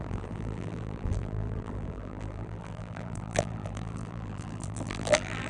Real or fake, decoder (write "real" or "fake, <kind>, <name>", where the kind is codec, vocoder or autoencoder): fake, vocoder, BigVGAN v2